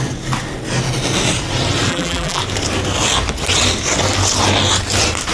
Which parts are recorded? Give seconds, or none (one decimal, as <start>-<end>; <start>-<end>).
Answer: 0.0-1.9; 2.4-5.3